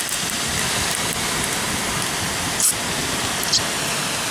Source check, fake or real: real